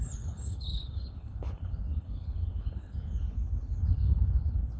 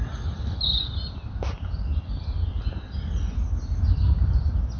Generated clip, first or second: first